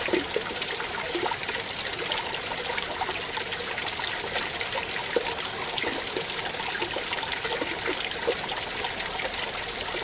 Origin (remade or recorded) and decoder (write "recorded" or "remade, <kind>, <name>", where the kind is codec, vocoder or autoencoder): recorded